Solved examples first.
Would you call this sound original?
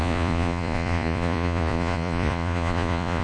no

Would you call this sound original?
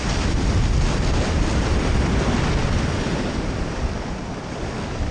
yes